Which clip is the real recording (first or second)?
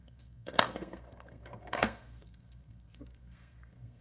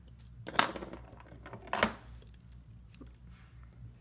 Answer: second